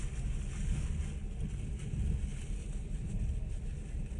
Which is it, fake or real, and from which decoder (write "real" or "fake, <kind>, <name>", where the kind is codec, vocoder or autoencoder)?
real